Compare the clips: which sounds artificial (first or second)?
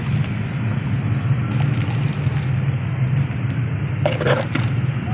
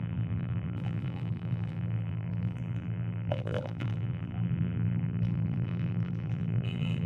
second